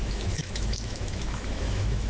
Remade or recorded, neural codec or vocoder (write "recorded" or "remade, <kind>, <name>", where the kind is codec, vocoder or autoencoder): remade, autoencoder, DAC-VAE